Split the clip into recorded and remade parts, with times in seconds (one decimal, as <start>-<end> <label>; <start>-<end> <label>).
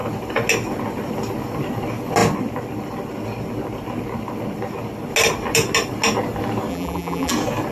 0.0-6.7 recorded; 6.7-7.3 remade; 7.3-7.7 recorded